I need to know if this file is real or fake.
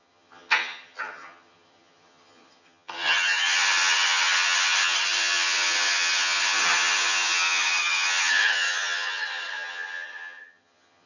fake